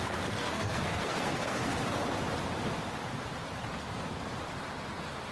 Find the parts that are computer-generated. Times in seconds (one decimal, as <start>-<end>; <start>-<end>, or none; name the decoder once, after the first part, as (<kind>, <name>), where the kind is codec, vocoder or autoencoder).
0.0-1.7 (codec, SNAC)